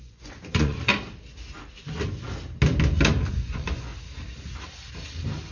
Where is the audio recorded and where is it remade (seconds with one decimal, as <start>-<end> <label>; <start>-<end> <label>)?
0.0-0.9 remade; 0.9-3.3 recorded; 3.3-3.9 remade; 3.9-5.5 recorded